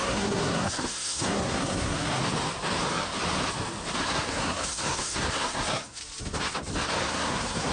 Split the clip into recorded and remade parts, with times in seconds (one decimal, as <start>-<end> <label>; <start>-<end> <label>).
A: 0.0-2.2 remade; 2.2-4.0 recorded; 4.0-6.0 remade; 6.0-7.0 recorded; 7.0-7.7 remade